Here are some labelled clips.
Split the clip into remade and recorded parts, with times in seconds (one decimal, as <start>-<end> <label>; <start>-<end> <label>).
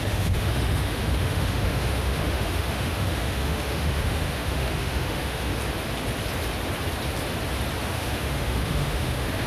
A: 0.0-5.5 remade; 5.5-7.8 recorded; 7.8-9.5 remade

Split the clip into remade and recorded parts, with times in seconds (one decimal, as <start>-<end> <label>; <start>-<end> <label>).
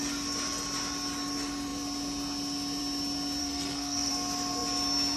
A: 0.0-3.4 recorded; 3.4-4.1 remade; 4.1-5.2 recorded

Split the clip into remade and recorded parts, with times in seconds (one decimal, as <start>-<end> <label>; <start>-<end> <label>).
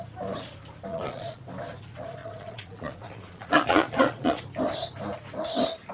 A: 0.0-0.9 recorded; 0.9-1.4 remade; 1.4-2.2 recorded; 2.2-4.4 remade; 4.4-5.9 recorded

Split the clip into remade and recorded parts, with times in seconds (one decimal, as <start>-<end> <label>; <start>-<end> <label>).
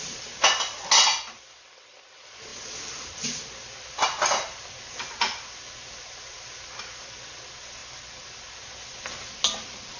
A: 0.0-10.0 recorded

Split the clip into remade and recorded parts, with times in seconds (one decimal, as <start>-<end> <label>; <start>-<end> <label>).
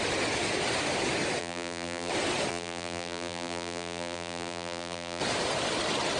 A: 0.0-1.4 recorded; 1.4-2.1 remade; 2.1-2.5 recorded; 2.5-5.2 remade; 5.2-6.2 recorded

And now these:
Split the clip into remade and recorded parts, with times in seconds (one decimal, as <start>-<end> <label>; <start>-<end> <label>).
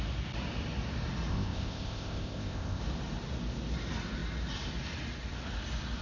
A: 0.0-1.3 recorded; 1.3-2.8 remade; 2.8-6.0 recorded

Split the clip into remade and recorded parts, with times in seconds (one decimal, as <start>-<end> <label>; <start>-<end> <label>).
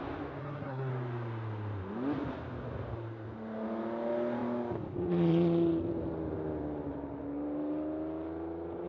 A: 0.0-0.4 recorded; 0.4-0.9 remade; 0.9-8.9 recorded